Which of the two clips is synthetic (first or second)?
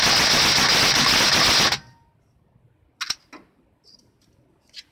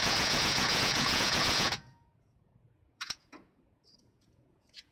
second